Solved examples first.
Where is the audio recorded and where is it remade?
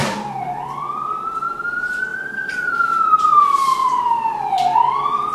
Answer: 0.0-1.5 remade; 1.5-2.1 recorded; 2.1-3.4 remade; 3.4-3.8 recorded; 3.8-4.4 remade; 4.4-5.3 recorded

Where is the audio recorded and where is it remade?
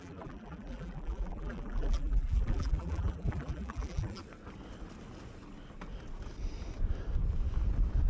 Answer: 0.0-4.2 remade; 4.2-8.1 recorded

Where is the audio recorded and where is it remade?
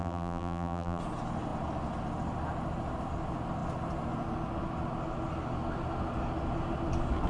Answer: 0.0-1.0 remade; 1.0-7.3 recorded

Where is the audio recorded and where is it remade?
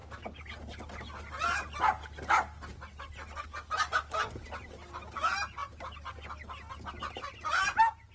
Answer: 0.0-8.1 recorded